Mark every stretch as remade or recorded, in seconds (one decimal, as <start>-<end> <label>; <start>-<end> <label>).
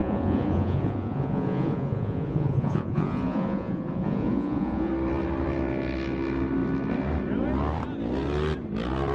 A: 0.0-4.9 remade; 4.9-9.1 recorded